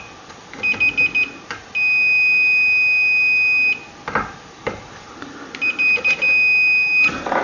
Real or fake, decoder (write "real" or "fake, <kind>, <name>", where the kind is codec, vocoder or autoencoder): real